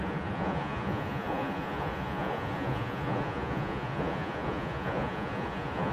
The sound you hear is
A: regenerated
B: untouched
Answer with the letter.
A